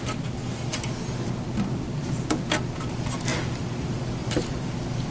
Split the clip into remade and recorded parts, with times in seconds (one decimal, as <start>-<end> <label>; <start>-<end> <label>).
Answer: 0.0-5.1 recorded